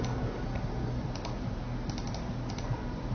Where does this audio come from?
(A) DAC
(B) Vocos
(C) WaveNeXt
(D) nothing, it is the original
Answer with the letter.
D